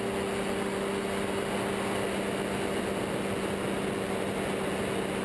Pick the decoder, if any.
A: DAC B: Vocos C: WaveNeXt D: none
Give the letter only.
D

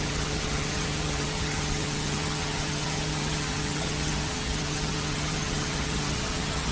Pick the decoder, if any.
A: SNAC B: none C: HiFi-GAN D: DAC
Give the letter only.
C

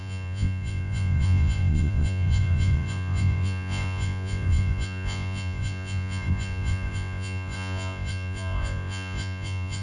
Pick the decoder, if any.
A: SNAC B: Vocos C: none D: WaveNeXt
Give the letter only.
B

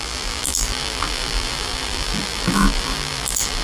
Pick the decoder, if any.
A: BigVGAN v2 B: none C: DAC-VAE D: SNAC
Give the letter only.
A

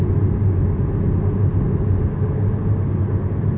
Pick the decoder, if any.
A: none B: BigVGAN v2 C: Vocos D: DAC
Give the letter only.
A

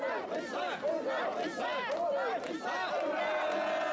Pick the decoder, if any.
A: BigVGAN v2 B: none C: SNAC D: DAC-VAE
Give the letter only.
B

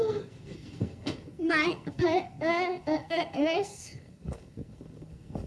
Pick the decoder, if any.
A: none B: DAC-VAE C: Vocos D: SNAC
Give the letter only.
D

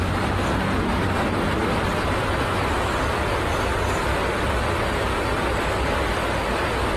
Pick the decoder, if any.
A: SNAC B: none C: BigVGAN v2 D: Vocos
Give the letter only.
C